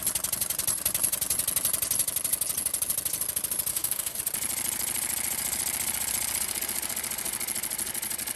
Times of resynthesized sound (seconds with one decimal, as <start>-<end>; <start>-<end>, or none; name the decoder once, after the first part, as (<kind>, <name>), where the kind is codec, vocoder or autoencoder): 3.7-4.2 (codec, DAC)